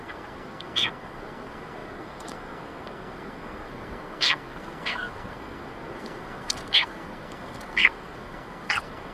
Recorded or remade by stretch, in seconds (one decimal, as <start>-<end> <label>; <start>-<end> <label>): 0.0-9.1 remade